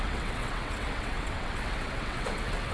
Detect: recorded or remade remade